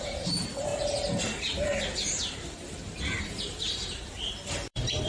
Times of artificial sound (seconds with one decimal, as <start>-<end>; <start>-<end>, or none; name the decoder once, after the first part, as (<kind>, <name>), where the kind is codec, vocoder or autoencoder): 0.0-0.7 (vocoder, BigVGAN v2); 3.2-5.1

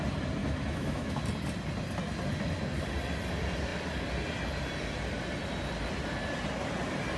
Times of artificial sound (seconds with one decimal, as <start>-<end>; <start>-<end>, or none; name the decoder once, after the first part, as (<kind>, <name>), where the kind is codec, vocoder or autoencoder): 0.4-1.2 (autoencoder, DAC-VAE)

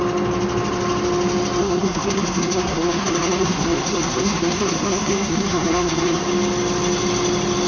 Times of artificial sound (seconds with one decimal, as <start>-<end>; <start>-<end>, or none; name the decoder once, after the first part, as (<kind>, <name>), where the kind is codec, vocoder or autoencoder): 1.6-6.2 (codec, SNAC)

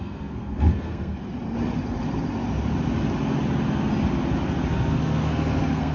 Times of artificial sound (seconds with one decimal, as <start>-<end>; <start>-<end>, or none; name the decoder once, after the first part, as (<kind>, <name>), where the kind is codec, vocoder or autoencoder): 0.0-1.2 (codec, SNAC); 4.7-5.9

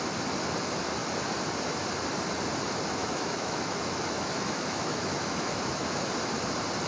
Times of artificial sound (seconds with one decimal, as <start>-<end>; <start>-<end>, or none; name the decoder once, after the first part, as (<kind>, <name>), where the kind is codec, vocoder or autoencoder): 3.0-6.1 (autoencoder, DAC-VAE)

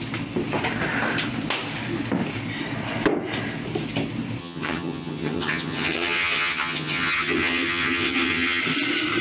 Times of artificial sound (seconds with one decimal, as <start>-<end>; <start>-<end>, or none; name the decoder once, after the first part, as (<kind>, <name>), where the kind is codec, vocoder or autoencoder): 4.4-8.6 (vocoder, HiFi-GAN)